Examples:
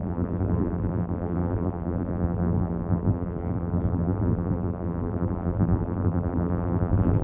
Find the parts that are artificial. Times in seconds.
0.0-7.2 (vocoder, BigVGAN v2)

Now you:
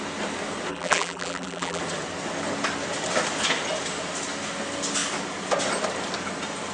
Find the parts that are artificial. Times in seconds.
0.7-1.8 (vocoder, BigVGAN v2)

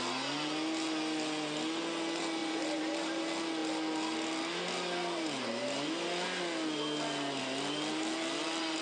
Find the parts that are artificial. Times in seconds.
2.4-3.2 (vocoder, BigVGAN v2)

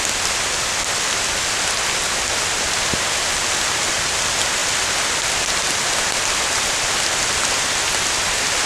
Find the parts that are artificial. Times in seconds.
none